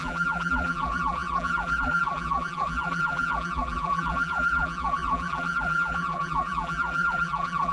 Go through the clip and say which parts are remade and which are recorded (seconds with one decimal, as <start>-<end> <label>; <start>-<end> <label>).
0.0-7.7 remade